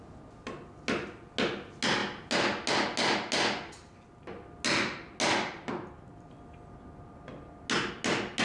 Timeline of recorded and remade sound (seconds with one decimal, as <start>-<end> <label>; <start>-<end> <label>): 0.0-8.4 recorded